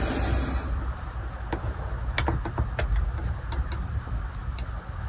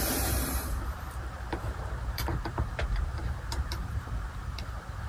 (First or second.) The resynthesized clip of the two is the second